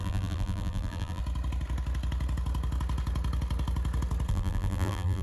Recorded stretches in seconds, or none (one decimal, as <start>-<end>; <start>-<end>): 1.2-4.3